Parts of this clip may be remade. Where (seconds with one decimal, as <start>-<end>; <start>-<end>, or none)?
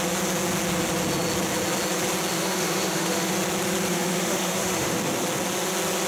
2.3-3.3; 3.9-5.0